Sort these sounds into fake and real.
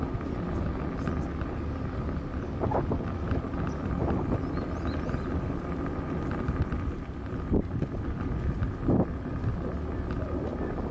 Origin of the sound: real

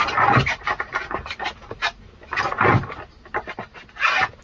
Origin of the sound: real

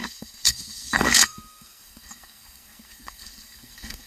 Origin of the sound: fake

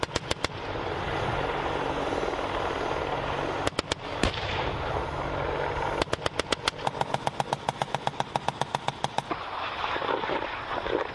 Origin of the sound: real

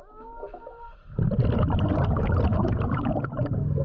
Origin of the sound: fake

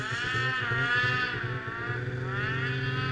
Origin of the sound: real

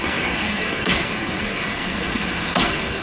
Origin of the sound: fake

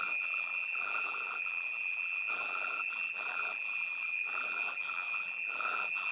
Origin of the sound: fake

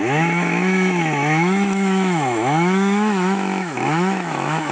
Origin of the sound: fake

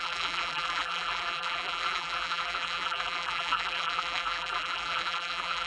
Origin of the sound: fake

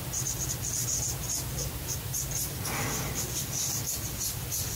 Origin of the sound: real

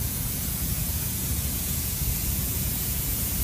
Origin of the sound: fake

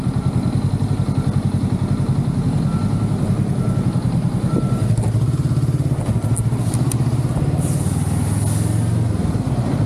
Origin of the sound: real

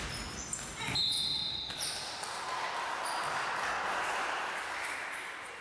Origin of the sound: real